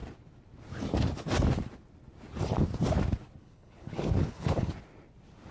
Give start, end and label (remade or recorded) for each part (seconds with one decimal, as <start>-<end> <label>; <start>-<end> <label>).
0.0-3.4 recorded; 3.4-4.7 remade; 4.7-5.5 recorded

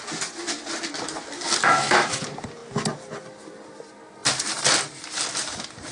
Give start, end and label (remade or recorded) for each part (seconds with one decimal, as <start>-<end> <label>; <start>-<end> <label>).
0.0-1.6 recorded; 1.6-2.2 remade; 2.2-5.9 recorded

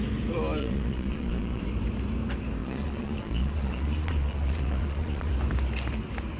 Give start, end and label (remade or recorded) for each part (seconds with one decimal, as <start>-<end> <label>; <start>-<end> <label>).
0.0-0.6 recorded; 0.6-1.6 remade; 1.6-2.6 recorded; 2.6-5.3 remade; 5.3-6.4 recorded

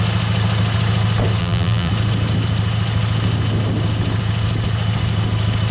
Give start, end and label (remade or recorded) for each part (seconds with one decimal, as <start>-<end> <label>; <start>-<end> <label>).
0.0-1.4 recorded; 1.4-1.9 remade; 1.9-5.7 recorded

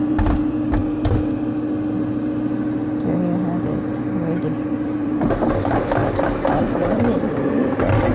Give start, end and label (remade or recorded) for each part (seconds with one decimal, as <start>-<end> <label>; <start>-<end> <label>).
0.0-0.8 remade; 0.8-4.7 recorded; 4.7-8.1 remade

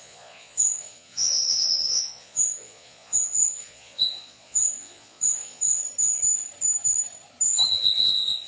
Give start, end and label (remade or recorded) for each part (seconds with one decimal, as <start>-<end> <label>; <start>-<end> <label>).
0.0-5.8 remade; 5.8-7.7 recorded; 7.7-8.5 remade

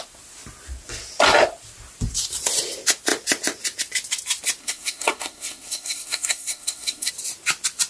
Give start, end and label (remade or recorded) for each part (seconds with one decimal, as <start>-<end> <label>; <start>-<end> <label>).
0.0-4.6 recorded; 4.6-7.1 remade; 7.1-7.9 recorded

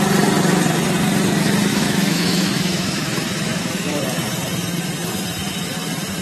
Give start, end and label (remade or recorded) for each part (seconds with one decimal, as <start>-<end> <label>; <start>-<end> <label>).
0.0-1.7 recorded; 1.7-4.0 remade; 4.0-6.2 recorded